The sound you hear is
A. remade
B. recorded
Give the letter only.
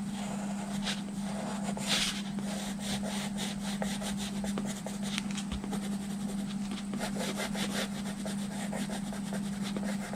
B